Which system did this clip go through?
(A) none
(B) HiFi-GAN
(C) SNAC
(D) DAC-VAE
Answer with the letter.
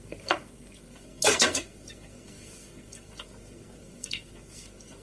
C